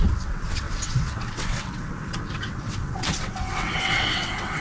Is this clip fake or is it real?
fake